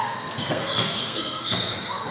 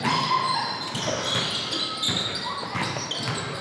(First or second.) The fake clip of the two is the first